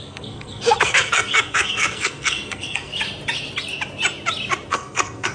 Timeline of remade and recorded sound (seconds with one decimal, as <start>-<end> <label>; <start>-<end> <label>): 0.0-2.9 remade; 2.9-4.7 recorded; 4.7-5.3 remade